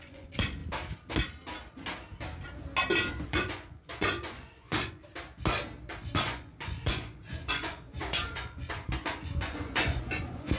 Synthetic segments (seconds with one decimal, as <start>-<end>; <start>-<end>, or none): 0.0-0.6; 3.1-5.0; 6.0-10.6